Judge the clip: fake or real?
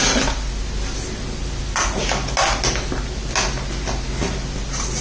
real